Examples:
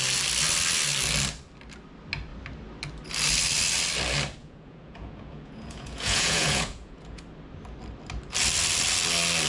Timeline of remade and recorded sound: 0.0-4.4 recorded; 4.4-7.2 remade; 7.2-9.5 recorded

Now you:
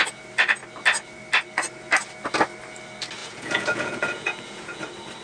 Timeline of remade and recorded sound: 0.0-3.2 recorded; 3.2-4.8 remade; 4.8-5.2 recorded

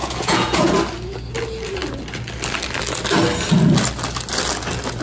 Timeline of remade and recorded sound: 0.0-0.8 remade; 0.8-5.0 recorded

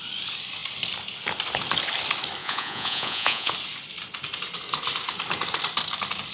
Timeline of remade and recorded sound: 0.0-2.4 recorded; 2.4-3.5 remade; 3.5-6.3 recorded